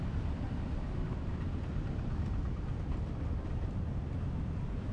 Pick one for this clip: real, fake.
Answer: real